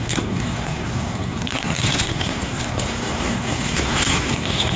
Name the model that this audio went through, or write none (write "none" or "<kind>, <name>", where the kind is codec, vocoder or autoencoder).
codec, SNAC